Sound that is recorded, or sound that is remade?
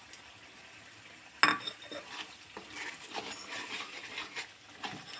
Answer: recorded